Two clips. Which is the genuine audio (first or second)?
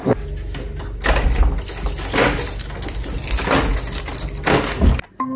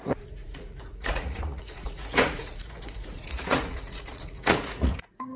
first